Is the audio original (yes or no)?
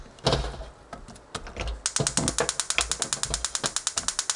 yes